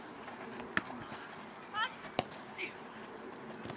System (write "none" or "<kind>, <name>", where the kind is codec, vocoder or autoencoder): none